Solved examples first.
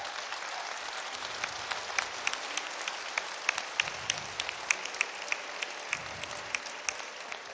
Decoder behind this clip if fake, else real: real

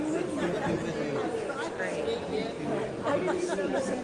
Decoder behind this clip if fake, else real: real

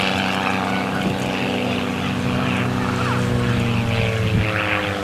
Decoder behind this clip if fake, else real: real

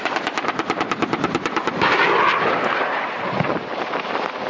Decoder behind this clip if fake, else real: real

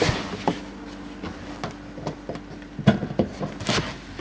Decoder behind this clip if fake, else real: real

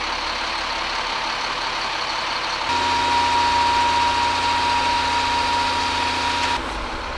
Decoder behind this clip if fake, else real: real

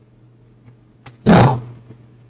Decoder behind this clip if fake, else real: real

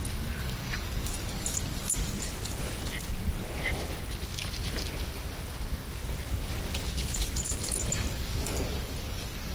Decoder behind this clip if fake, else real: fake, codec, DAC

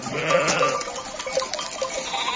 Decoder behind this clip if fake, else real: real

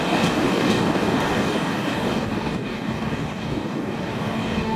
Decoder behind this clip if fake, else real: fake, codec, DAC